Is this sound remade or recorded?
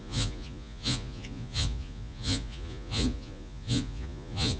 remade